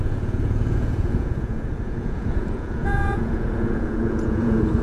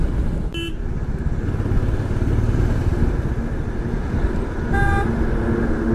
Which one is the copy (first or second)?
first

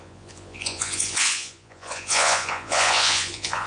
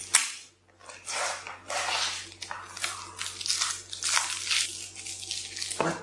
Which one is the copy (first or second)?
first